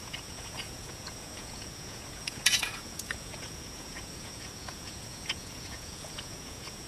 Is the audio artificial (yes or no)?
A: yes